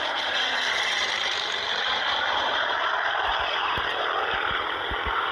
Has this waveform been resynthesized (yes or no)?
yes